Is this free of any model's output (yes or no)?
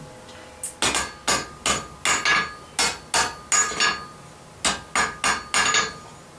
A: yes